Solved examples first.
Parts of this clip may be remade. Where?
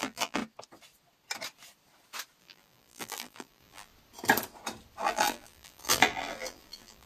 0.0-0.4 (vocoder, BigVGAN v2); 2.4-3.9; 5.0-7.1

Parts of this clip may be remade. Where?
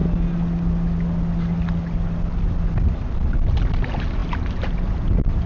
3.0-5.5 (vocoder, BigVGAN v2)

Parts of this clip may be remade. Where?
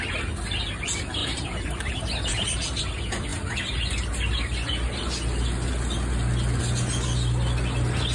1.2-2.8 (vocoder, BigVGAN v2)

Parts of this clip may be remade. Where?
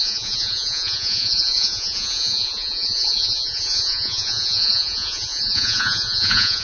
0.0-6.6 (vocoder, Vocos)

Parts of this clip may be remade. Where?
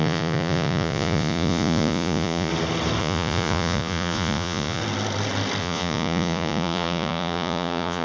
0.0-2.5 (vocoder, Vocos); 3.0-4.8; 5.6-8.0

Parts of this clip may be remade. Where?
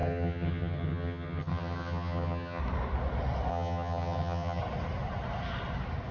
0.0-2.6 (vocoder, HiFi-GAN); 3.5-4.6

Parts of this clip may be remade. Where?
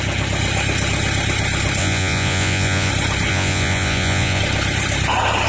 1.8-2.9 (vocoder, Vocos); 3.3-4.4